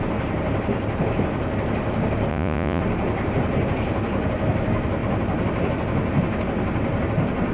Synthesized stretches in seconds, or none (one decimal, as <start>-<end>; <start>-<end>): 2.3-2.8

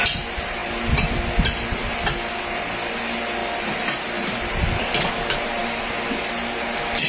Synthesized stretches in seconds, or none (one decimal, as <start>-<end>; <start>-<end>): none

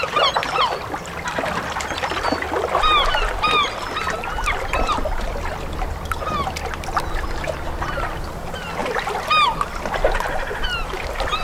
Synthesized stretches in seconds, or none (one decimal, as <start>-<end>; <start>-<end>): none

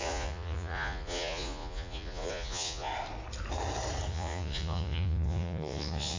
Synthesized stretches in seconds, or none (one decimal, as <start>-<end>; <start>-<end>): 0.0-2.9; 4.1-6.2

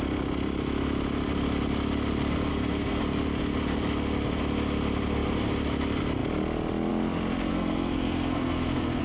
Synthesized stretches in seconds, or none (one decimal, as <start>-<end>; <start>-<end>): 2.5-3.0; 7.5-9.0

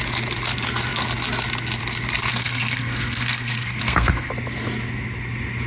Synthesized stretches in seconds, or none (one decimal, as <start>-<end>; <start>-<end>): 2.3-4.3